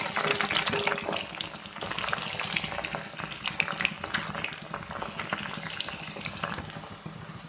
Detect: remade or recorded recorded